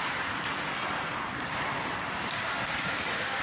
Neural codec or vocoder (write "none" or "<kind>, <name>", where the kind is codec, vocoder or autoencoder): none